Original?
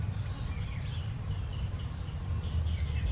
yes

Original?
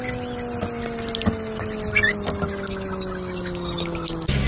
yes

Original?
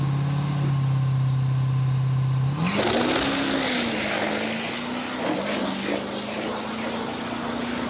yes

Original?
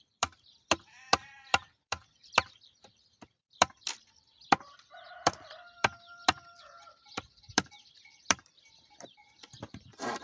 no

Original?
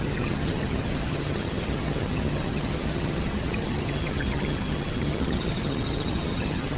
no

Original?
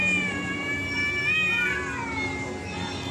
yes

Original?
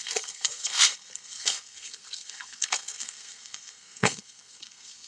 no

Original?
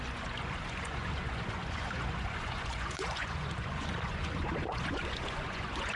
no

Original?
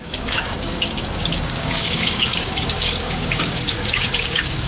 no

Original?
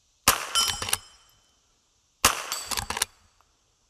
yes